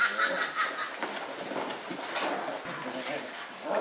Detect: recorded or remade recorded